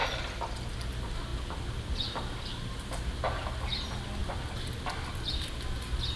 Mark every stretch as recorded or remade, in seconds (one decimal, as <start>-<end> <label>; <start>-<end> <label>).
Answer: 0.0-4.2 recorded; 4.2-5.2 remade; 5.2-6.2 recorded